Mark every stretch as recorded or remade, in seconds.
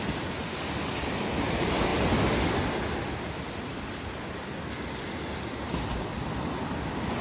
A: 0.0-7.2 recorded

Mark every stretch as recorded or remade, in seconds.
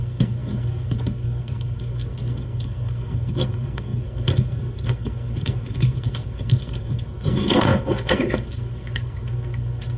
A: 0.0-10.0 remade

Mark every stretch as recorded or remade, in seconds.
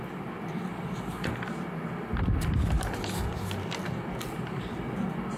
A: 0.0-5.4 recorded